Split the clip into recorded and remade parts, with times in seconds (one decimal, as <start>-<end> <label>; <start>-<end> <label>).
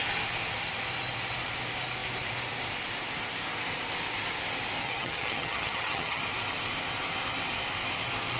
0.0-4.8 recorded; 4.8-6.2 remade; 6.2-8.4 recorded